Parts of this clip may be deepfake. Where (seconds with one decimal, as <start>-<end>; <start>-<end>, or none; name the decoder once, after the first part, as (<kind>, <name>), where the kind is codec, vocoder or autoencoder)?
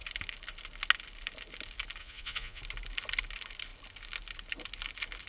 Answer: 2.0-2.6 (vocoder, Vocos)